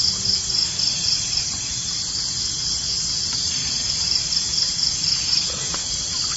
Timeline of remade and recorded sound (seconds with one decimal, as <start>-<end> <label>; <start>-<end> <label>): 0.0-3.6 recorded; 3.6-4.4 remade; 4.4-6.4 recorded